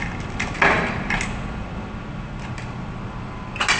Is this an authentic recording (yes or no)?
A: yes